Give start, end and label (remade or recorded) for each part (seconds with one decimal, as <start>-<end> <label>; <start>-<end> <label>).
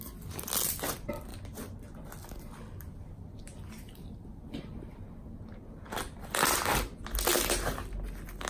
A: 0.0-1.3 recorded; 1.3-4.4 remade; 4.4-8.5 recorded